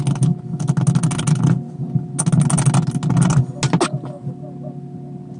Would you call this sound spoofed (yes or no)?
no